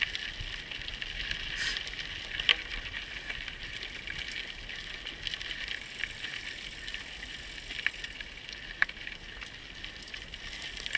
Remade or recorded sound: recorded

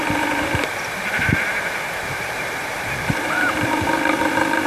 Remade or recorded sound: remade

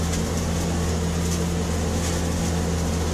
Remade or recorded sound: recorded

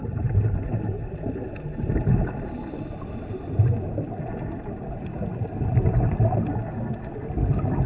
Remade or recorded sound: recorded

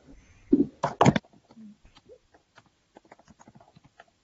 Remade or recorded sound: recorded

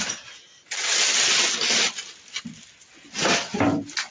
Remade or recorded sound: recorded